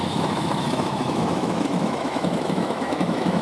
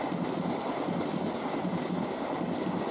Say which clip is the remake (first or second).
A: first